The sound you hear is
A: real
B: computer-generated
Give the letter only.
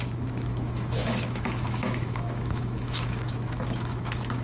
B